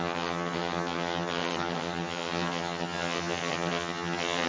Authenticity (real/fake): fake